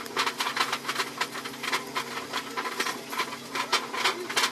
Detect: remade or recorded recorded